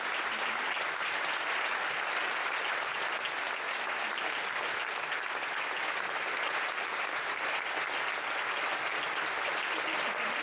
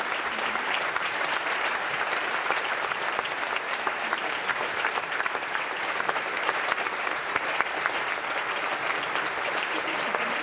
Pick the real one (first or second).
first